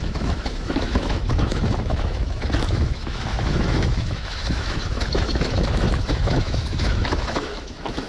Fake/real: fake